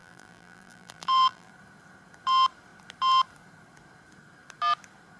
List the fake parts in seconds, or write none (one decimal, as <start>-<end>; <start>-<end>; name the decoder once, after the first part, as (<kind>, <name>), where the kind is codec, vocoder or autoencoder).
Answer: 0.0-1.5 (vocoder, BigVGAN v2)